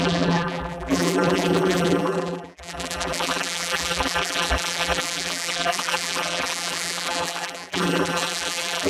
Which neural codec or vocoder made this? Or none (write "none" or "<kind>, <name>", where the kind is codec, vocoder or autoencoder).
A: vocoder, BigVGAN v2